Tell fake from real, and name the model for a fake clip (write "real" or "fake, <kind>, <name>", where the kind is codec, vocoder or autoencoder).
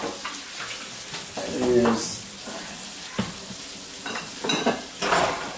real